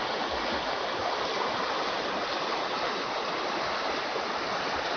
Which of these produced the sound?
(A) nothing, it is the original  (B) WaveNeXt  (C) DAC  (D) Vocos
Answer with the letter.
A